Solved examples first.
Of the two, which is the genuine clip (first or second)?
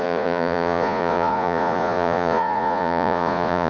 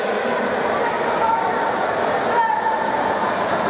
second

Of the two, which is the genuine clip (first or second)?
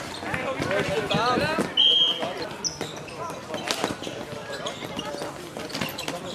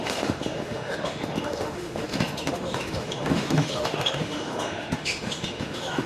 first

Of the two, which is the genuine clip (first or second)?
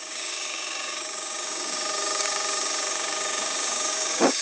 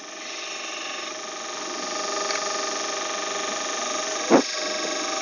second